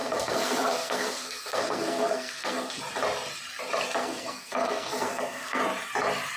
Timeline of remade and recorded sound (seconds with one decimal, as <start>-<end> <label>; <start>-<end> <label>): 0.0-2.8 remade; 2.8-4.0 recorded; 4.0-5.6 remade; 5.6-6.4 recorded